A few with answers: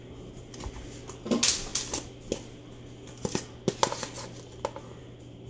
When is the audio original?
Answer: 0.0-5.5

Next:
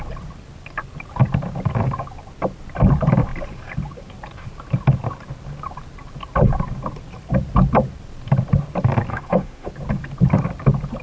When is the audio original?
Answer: 0.0-9.1; 9.7-11.0

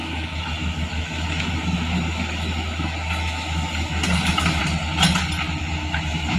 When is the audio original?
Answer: 4.6-5.6

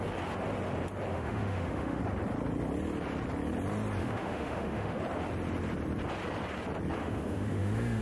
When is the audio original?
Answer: 0.0-1.1; 2.0-4.0; 5.0-7.0